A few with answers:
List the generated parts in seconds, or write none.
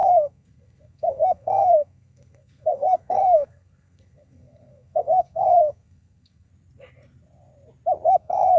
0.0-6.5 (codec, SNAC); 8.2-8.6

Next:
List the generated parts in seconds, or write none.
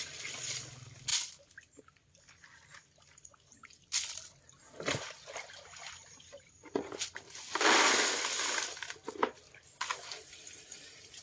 none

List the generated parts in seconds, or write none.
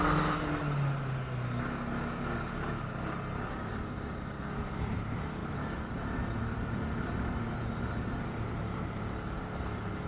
none